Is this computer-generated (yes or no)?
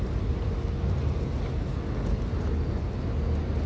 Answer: no